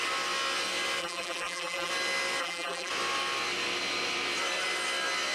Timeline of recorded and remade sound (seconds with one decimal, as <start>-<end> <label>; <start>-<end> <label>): 0.0-1.0 recorded; 1.0-1.9 remade; 1.9-2.4 recorded; 2.4-2.9 remade; 2.9-5.3 recorded